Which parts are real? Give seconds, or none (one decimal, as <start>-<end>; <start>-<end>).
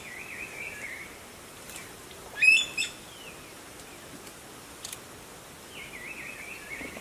0.0-2.5; 3.2-7.0